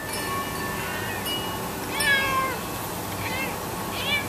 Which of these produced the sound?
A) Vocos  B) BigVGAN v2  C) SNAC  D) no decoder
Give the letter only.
D